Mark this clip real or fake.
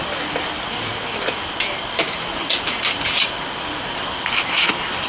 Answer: real